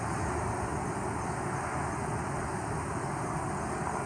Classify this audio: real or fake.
real